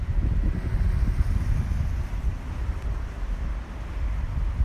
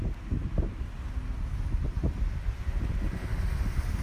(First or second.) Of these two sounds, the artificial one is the first